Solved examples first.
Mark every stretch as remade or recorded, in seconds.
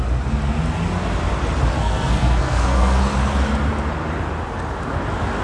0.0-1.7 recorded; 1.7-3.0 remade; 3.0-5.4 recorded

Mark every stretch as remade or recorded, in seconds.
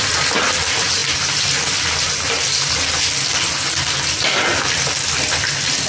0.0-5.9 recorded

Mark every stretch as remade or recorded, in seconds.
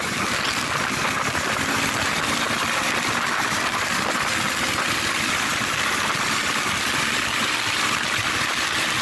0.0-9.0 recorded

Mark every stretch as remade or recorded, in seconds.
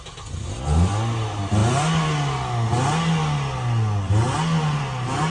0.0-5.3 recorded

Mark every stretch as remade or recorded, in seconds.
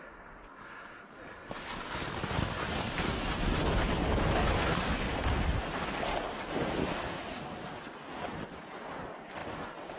0.0-10.0 recorded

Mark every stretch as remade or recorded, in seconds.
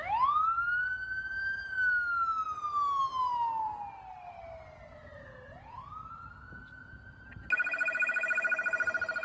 0.0-9.2 recorded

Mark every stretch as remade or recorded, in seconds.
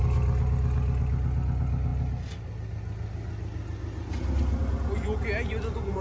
0.0-6.0 recorded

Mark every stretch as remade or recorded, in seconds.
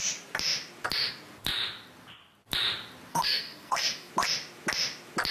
0.0-3.1 recorded; 3.1-4.1 remade; 4.1-5.3 recorded